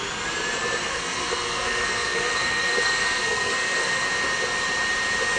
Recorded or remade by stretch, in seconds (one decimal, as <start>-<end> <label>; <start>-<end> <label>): 0.0-0.9 recorded; 0.9-4.1 remade; 4.1-5.4 recorded